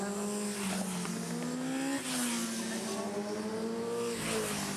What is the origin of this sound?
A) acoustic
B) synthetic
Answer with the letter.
A